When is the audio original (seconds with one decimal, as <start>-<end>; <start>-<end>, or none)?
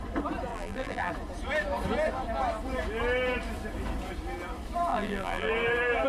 0.0-0.5; 1.1-4.9; 5.5-6.1